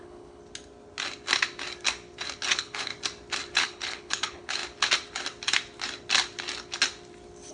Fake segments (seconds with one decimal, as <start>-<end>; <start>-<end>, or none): 0.0-0.4; 2.5-2.9; 3.6-4.6